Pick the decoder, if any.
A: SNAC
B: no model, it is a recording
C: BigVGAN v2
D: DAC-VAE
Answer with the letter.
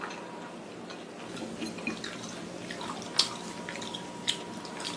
B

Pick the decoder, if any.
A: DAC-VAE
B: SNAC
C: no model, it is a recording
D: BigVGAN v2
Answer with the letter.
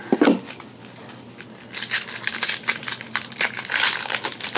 C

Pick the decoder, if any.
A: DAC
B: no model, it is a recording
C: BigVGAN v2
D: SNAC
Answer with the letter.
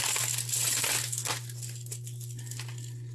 B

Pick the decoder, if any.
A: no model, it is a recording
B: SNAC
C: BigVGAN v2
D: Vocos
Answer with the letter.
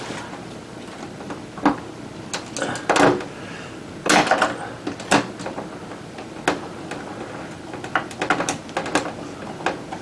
A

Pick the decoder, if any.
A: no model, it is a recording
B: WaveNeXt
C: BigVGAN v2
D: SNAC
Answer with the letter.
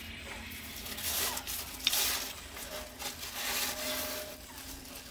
A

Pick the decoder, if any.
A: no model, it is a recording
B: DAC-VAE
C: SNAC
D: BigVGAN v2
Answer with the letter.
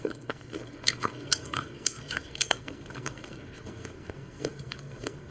C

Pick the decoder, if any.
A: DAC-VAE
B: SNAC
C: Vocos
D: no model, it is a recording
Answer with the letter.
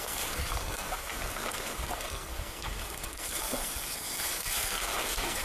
B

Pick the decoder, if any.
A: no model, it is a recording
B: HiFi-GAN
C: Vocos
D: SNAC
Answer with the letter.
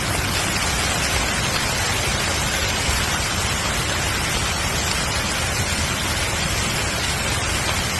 A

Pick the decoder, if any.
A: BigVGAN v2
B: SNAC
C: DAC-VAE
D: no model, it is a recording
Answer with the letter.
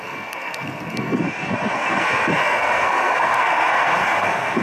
B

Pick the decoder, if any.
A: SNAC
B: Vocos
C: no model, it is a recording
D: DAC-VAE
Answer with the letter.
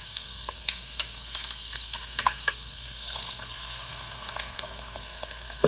A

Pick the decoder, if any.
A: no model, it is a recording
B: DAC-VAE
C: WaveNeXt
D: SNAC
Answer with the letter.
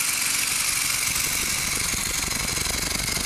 A